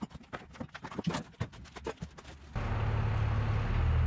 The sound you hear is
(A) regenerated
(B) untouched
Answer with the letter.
B